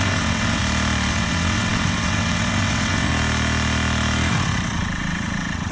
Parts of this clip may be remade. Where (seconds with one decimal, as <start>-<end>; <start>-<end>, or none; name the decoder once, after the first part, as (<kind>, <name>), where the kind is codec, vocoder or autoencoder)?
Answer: 0.0-0.6 (vocoder, WaveNeXt); 1.1-3.1; 4.3-5.7